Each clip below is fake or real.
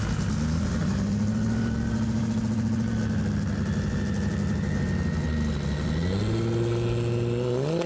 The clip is real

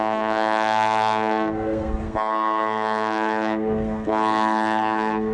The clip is fake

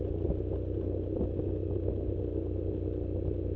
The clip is real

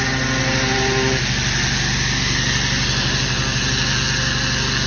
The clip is real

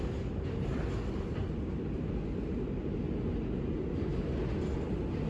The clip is real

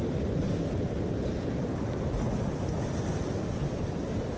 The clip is real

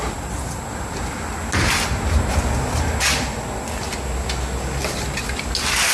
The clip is real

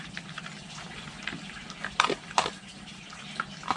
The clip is real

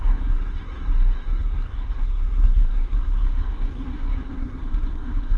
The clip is fake